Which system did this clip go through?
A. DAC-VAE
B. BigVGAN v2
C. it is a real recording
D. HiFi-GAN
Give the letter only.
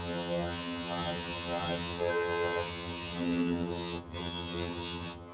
D